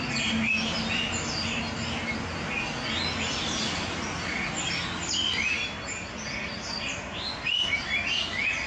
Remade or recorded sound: recorded